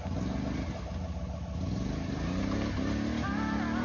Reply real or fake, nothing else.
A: real